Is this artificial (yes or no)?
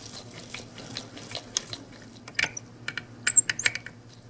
no